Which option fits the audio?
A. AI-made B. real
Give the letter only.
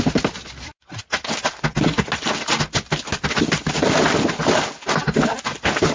B